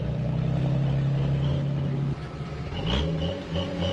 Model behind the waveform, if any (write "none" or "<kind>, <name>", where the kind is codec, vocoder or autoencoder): none